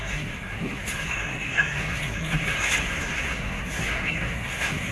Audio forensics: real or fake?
fake